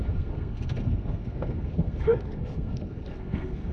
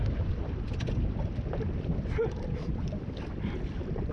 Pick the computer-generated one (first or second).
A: first